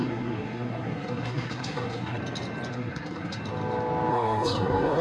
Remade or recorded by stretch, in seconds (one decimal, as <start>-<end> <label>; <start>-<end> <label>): 0.0-2.2 remade; 2.2-2.7 recorded; 2.7-3.4 remade; 3.4-4.1 recorded; 4.1-5.0 remade